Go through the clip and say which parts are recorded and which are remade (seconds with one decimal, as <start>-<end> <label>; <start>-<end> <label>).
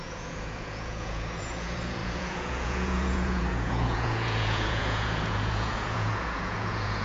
0.0-7.0 remade